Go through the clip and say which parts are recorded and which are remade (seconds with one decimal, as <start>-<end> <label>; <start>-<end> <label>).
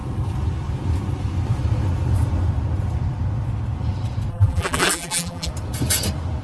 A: 0.0-4.3 recorded; 4.3-5.5 remade; 5.5-6.4 recorded